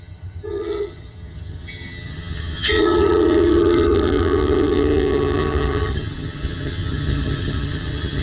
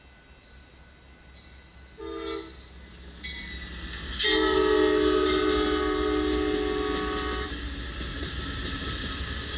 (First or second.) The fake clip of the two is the first